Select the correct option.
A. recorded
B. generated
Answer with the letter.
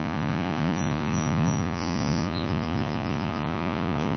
B